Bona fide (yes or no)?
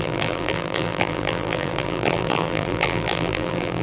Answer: no